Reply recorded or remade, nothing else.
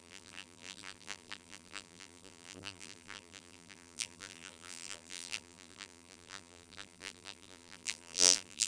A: remade